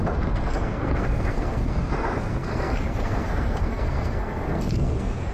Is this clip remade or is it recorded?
remade